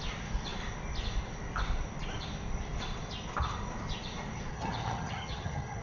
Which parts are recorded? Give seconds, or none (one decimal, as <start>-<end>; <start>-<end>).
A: 0.0-4.5